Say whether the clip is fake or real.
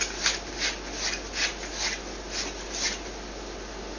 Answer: real